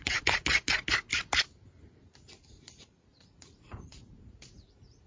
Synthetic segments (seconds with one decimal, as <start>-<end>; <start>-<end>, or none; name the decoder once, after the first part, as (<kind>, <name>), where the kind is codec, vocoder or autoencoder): 0.0-1.1 (vocoder, Vocos); 2.0-5.1